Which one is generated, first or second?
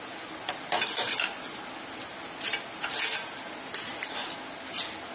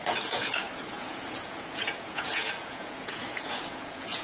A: second